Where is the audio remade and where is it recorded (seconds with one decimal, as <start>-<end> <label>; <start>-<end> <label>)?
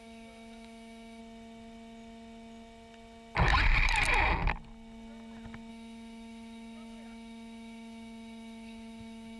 0.0-1.2 remade; 1.2-5.7 recorded; 5.7-9.4 remade